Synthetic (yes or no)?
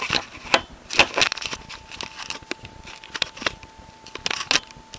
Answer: no